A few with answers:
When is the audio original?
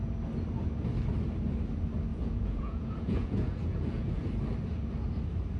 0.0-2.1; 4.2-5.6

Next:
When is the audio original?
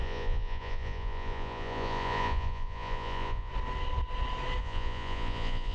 3.5-4.6